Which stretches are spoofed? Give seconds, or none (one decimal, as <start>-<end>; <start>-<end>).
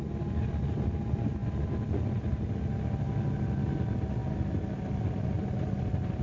none